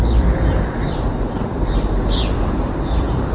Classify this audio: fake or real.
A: fake